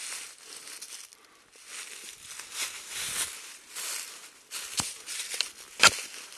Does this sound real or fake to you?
real